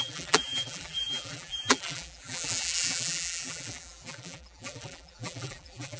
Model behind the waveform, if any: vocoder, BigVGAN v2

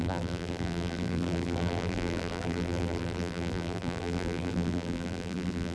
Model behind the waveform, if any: vocoder, BigVGAN v2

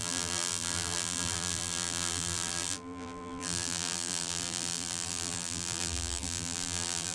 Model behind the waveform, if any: vocoder, BigVGAN v2